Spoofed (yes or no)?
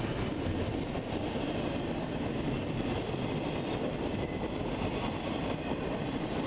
no